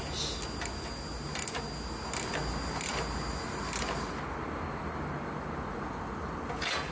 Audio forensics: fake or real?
real